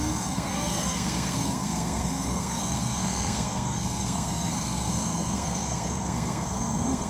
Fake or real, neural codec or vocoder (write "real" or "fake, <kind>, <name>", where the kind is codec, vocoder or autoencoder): fake, codec, SNAC